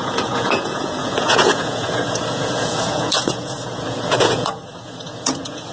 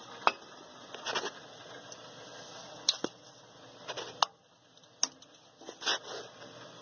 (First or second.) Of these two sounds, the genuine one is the second